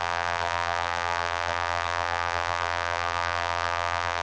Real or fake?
fake